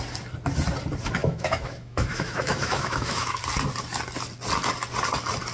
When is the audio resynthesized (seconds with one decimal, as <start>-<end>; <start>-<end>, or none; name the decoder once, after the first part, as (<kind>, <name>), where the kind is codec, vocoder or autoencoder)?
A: 1.2-3.4 (autoencoder, DAC-VAE)